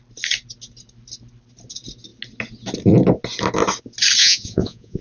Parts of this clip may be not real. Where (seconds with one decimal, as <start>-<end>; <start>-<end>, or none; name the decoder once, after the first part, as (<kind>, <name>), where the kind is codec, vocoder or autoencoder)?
4.2-5.0 (vocoder, Vocos)